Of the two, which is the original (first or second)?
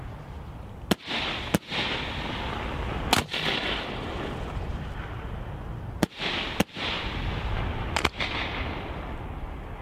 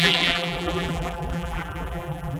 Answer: first